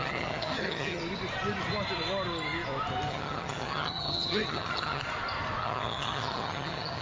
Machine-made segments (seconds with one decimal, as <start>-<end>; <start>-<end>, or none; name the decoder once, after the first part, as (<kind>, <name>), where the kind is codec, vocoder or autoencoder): 0.0-1.0 (vocoder, HiFi-GAN); 3.1-5.0; 5.6-7.0